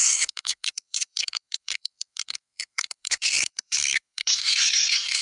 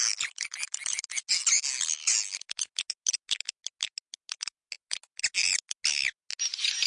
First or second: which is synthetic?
first